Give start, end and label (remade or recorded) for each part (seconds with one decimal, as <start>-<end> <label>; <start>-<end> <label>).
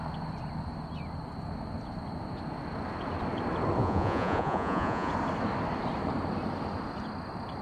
0.0-3.8 recorded; 3.8-5.1 remade; 5.1-7.6 recorded